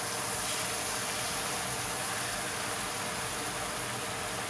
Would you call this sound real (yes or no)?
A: yes